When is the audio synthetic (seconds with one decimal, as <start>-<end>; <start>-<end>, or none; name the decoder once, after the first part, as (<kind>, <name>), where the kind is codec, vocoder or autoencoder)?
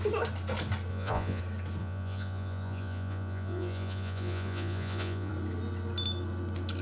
0.9-1.4 (vocoder, Vocos); 1.8-5.3